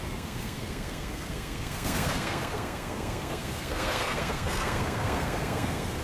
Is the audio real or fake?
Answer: fake